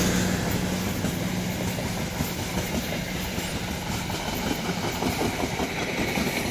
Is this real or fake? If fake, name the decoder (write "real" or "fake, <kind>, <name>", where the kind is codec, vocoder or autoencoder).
real